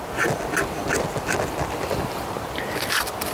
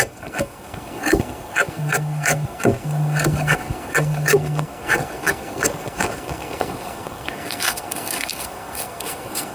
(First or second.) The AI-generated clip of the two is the second